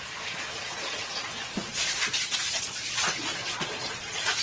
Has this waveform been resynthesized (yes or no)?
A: yes